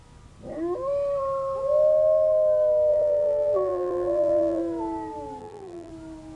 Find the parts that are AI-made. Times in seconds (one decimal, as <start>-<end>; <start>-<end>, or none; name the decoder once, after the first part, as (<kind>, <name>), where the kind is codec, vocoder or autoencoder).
2.9-4.6 (vocoder, BigVGAN v2); 5.4-5.9